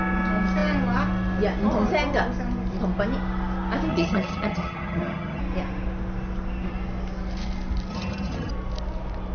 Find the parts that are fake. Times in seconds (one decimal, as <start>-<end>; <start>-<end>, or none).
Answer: 3.9-5.4; 7.9-8.5